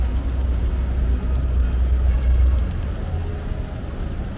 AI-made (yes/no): no